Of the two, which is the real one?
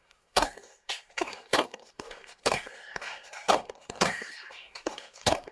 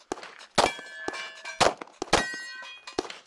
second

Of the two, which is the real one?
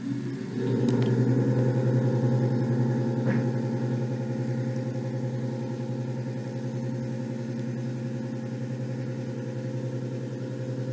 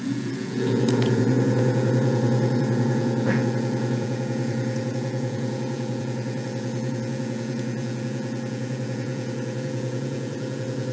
first